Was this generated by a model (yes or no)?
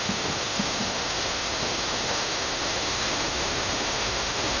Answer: yes